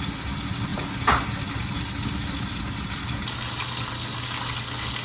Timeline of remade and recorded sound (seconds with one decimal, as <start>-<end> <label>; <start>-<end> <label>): 0.0-5.0 recorded